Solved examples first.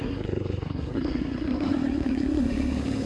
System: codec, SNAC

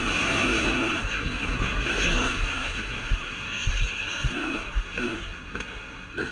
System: codec, SNAC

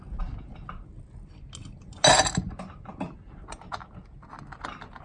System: none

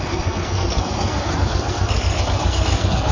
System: codec, SNAC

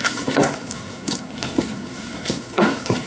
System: codec, SNAC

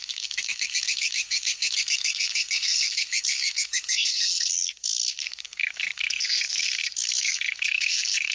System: codec, SNAC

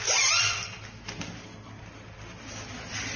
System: none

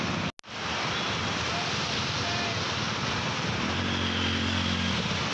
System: none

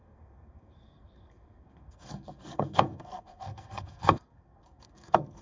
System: codec, SNAC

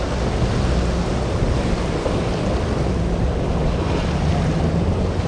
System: none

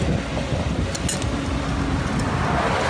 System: none